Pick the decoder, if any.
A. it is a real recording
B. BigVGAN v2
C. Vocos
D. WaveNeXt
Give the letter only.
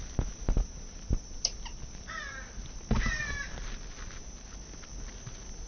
A